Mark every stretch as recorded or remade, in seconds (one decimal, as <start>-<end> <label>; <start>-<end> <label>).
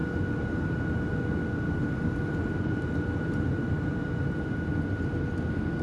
0.0-5.8 recorded